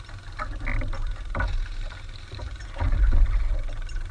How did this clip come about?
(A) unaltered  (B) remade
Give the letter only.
A